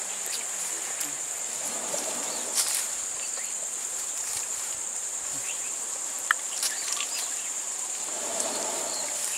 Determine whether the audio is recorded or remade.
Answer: remade